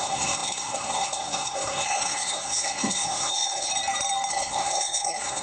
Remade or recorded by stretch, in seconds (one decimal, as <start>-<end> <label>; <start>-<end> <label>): 0.0-3.7 remade; 3.7-4.3 recorded; 4.3-5.4 remade

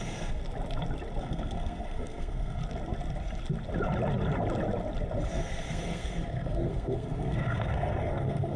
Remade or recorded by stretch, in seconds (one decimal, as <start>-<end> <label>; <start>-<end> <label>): 0.0-0.4 remade; 0.4-1.2 recorded; 1.2-2.6 remade; 2.6-5.3 recorded; 5.3-8.6 remade

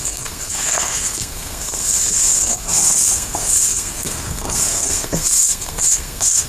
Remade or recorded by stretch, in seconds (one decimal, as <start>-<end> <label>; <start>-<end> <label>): 0.0-6.5 remade

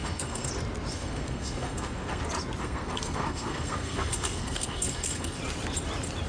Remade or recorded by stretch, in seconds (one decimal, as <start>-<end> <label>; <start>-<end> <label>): 0.0-0.5 remade; 0.5-0.9 recorded; 0.9-2.2 remade; 2.2-2.6 recorded; 2.6-5.4 remade; 5.4-6.3 recorded

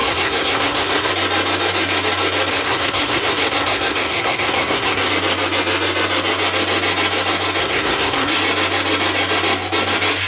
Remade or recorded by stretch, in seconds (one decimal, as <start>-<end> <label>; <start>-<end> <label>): 0.0-1.1 remade; 1.1-2.5 recorded; 2.5-5.1 remade; 5.1-7.6 recorded; 7.6-8.3 remade; 8.3-10.3 recorded

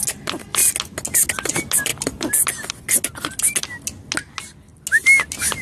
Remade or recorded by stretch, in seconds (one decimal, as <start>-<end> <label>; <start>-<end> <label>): 0.0-5.6 recorded